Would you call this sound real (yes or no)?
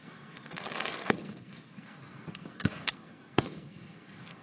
no